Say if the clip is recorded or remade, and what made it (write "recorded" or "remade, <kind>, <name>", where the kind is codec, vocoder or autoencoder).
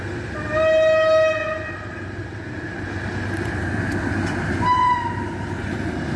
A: recorded